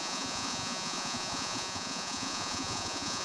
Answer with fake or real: fake